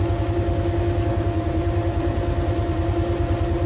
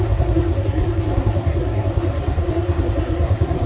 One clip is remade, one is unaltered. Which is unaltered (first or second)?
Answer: first